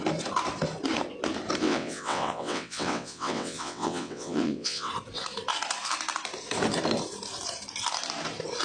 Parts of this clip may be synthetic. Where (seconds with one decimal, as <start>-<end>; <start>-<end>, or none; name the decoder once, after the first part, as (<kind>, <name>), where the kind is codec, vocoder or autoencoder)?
1.6-4.9 (vocoder, WaveNeXt)